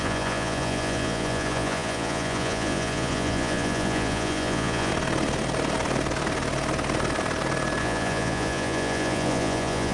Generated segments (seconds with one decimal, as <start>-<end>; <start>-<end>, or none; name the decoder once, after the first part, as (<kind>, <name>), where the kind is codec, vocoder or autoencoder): 0.0-4.9 (vocoder, Vocos); 7.8-9.9